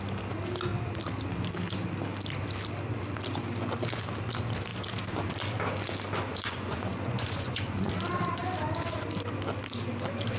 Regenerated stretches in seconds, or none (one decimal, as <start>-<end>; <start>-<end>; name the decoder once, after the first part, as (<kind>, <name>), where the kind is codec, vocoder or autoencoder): 6.3-7.9 (vocoder, Vocos)